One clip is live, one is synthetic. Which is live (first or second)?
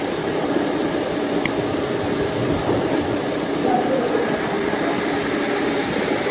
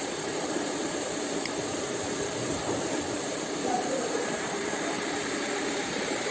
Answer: first